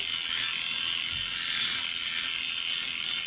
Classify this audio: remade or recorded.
recorded